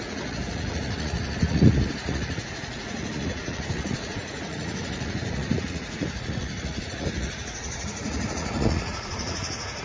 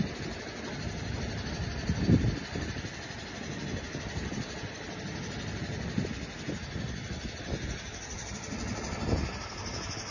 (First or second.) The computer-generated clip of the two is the first